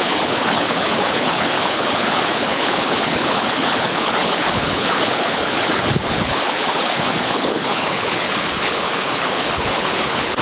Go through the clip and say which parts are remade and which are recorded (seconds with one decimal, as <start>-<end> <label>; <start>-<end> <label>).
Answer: 0.0-10.4 remade